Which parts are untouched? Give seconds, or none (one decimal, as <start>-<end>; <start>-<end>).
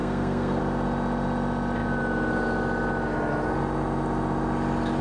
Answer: 0.6-5.0